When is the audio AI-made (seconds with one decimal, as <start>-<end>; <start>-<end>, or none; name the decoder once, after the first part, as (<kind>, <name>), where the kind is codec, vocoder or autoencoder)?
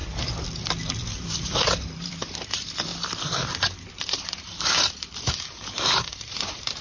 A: 1.0-2.9 (vocoder, BigVGAN v2); 3.9-6.8